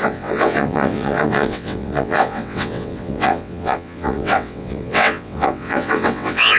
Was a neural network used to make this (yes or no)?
yes